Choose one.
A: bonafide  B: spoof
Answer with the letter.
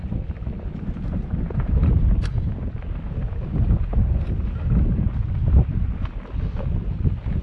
A